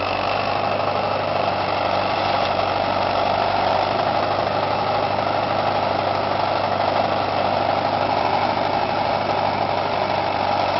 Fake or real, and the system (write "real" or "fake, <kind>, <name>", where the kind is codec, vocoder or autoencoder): real